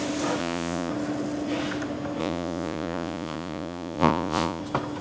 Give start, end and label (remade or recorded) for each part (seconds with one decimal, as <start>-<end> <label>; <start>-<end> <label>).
0.0-0.4 recorded; 0.4-0.9 remade; 0.9-2.2 recorded; 2.2-4.6 remade; 4.6-5.0 recorded